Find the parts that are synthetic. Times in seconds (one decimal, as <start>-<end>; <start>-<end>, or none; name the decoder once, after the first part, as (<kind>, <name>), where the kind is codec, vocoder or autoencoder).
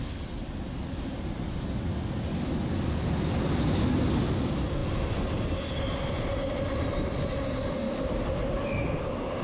none